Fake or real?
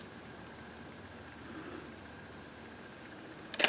real